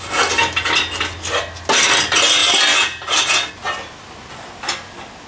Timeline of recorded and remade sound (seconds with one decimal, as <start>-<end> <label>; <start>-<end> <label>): 0.0-5.3 recorded

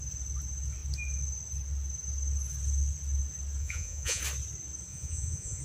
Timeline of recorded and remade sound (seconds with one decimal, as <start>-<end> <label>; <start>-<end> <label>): 0.0-3.6 recorded; 3.6-4.2 remade; 4.2-4.9 recorded; 4.9-5.6 remade

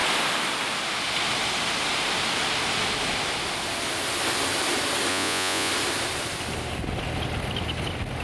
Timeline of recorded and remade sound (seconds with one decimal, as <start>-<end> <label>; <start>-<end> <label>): 0.0-5.1 recorded; 5.1-5.7 remade; 5.7-8.2 recorded

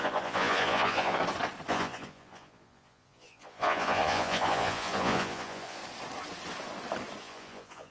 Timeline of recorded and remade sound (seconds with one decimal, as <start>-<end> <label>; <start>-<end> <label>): 0.0-1.2 remade; 1.2-1.7 recorded; 1.7-5.8 remade; 5.8-7.2 recorded; 7.2-7.9 remade

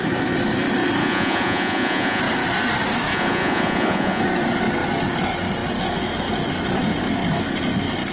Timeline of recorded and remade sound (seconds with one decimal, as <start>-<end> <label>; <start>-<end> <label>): 0.0-1.0 recorded; 1.0-2.2 remade; 2.2-3.1 recorded; 3.1-4.2 remade; 4.2-8.1 recorded

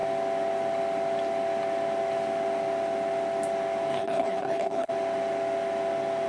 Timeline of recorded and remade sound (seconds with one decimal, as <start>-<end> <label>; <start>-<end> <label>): 0.0-3.9 recorded; 3.9-4.9 remade; 4.9-6.3 recorded